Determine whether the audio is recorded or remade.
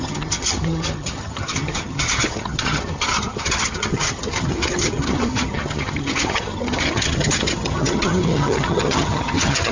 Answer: remade